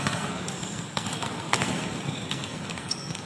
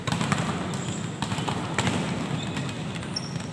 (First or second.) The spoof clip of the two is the first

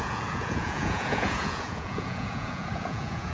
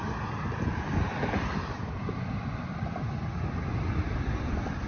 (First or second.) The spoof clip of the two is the first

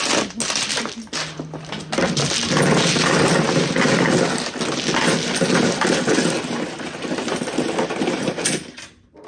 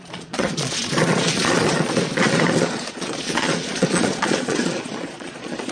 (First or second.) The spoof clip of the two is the second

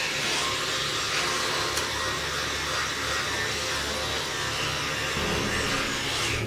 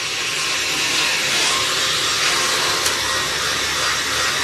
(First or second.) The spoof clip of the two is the second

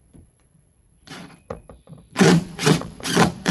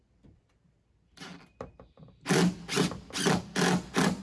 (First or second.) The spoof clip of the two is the first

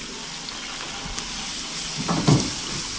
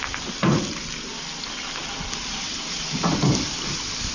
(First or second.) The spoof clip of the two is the second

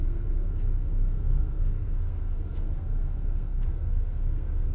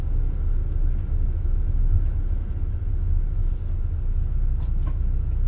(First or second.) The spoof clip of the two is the first